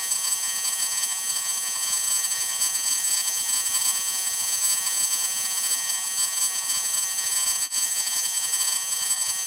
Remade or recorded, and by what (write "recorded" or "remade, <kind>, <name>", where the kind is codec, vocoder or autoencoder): remade, vocoder, Vocos